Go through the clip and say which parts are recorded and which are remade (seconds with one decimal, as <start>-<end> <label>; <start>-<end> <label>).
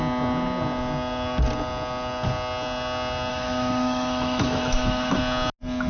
0.0-3.3 recorded; 3.3-5.2 remade; 5.2-5.9 recorded